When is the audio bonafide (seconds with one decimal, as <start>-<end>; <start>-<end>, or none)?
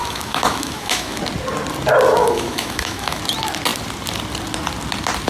1.2-2.2; 3.2-5.3